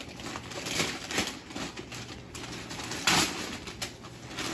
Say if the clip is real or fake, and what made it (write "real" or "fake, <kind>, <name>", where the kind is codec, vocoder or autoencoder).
real